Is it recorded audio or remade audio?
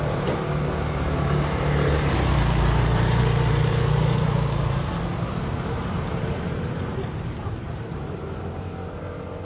remade